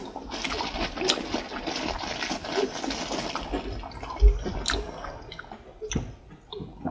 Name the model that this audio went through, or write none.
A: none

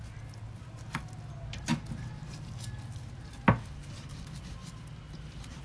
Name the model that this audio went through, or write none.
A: none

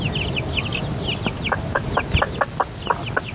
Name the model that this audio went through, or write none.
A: none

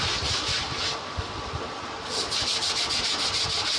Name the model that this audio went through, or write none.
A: none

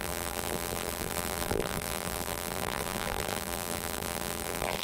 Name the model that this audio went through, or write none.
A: vocoder, BigVGAN v2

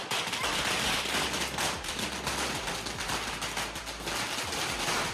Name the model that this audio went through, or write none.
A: none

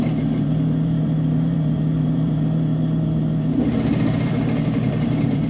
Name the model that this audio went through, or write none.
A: vocoder, BigVGAN v2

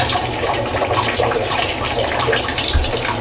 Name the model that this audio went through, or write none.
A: vocoder, BigVGAN v2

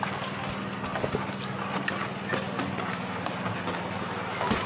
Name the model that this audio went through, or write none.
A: none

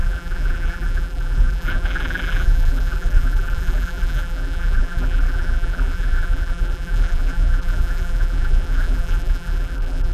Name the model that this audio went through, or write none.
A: vocoder, BigVGAN v2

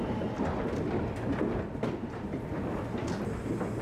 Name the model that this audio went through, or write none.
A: none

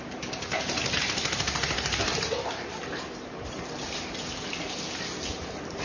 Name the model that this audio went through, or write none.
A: vocoder, BigVGAN v2